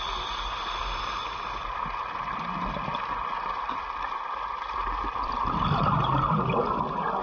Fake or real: fake